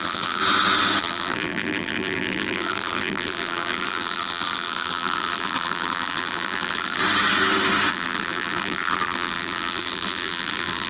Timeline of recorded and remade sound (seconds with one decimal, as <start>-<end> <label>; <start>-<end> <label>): 0.0-0.4 remade; 0.4-1.0 recorded; 1.0-7.0 remade; 7.0-7.9 recorded; 7.9-10.9 remade